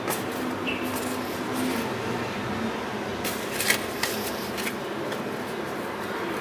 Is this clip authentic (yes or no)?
yes